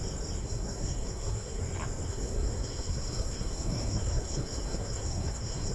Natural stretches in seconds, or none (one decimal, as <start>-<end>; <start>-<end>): 0.0-0.4; 1.6-2.1

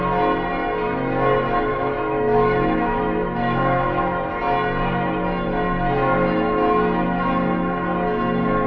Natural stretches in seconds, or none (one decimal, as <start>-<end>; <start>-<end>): 0.0-1.7; 4.4-8.7